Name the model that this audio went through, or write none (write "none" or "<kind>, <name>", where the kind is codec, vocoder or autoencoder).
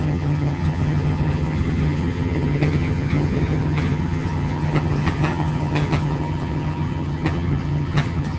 vocoder, HiFi-GAN